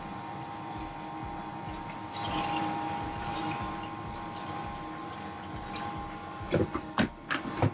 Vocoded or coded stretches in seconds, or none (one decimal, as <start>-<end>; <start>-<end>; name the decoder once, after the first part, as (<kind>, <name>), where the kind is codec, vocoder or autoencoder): none